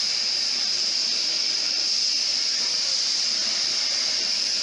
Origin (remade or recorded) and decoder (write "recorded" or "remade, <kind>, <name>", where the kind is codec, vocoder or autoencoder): remade, vocoder, BigVGAN v2